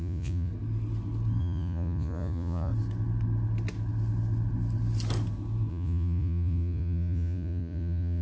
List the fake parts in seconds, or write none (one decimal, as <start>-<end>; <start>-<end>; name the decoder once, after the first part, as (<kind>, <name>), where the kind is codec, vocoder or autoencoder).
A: 0.0-0.5 (vocoder, Vocos); 1.4-2.7; 5.7-8.2

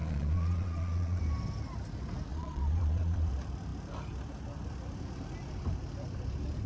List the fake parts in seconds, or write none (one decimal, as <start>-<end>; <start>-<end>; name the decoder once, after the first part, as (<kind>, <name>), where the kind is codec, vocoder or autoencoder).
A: 0.0-1.2 (vocoder, Vocos); 2.3-3.3

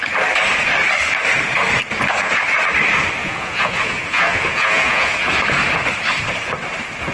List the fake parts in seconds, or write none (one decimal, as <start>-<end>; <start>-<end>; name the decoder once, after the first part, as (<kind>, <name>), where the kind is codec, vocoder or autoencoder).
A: 3.2-5.3 (vocoder, Vocos)

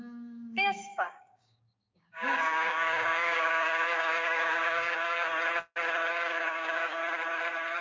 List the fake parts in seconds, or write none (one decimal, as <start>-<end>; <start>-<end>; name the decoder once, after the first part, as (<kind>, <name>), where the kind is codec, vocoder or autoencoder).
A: 0.0-5.3 (codec, DAC); 6.1-7.0

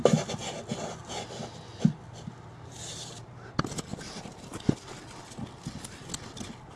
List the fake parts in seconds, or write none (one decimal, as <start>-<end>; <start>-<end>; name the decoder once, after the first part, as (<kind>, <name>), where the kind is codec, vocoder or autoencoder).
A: none

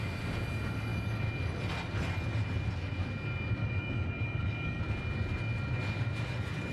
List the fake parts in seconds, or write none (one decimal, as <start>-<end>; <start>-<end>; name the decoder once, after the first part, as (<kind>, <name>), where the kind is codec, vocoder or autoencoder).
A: 3.6-4.8 (codec, DAC)

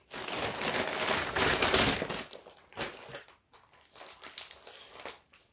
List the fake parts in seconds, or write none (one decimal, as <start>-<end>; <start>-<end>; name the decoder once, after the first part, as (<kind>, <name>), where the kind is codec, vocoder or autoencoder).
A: none

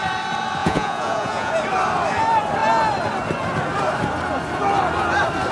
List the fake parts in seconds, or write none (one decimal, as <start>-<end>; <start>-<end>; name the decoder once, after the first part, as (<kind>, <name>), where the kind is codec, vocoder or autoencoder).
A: 0.6-1.5 (vocoder, Vocos)